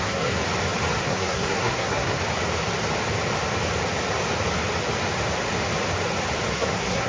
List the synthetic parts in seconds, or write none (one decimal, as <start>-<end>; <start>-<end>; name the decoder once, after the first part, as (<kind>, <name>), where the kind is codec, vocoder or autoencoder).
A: 0.0-0.4 (codec, SNAC); 1.0-2.2; 6.5-7.1